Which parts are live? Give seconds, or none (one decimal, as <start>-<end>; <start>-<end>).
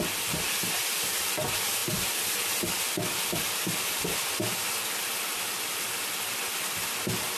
1.8-5.4